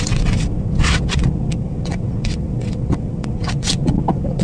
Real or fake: fake